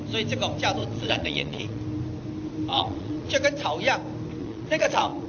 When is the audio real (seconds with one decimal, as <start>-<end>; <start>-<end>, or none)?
0.0-0.8; 1.8-2.7; 3.3-4.4